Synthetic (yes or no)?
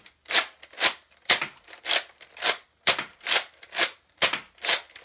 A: no